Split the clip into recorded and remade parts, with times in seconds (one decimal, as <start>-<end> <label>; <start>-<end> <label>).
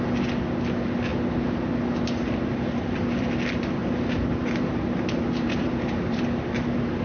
0.0-3.8 recorded; 3.8-6.2 remade; 6.2-7.0 recorded